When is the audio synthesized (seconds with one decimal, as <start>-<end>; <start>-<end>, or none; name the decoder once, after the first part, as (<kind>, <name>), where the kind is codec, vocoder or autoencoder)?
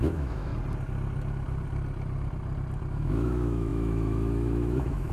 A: 0.0-0.5 (autoencoder, DAC-VAE); 2.9-5.1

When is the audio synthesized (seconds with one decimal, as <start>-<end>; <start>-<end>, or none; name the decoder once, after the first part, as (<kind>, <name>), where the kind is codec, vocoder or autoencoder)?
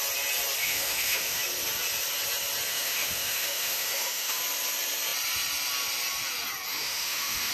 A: 0.6-1.4 (autoencoder, DAC-VAE); 2.7-4.4; 6.7-7.5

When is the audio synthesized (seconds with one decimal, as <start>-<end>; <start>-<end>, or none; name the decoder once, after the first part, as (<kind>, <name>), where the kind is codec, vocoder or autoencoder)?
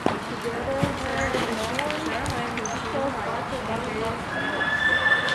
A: 1.1-1.7 (autoencoder, DAC-VAE)